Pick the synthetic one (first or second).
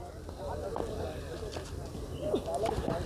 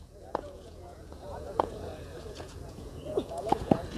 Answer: second